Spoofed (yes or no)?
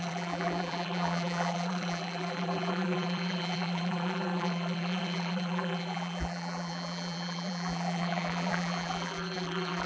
yes